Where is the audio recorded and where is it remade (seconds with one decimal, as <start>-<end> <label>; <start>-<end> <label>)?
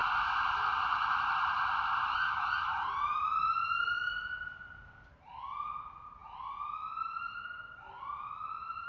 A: 0.0-8.9 recorded